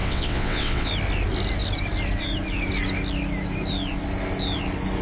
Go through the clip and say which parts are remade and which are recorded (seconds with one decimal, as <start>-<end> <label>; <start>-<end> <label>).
0.0-0.9 remade; 0.9-5.0 recorded